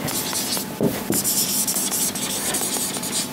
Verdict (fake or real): real